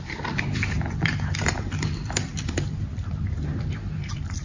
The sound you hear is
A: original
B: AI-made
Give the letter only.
B